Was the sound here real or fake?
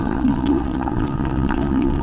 fake